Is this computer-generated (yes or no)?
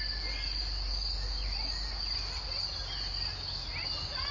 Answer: no